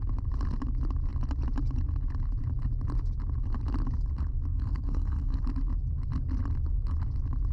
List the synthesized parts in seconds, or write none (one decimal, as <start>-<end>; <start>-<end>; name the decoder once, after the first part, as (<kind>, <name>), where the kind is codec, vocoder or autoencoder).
4.5-5.4 (codec, SNAC)